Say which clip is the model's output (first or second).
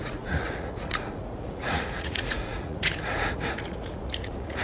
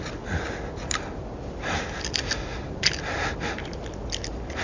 first